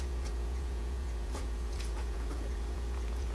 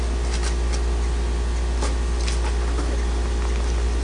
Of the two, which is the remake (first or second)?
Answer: first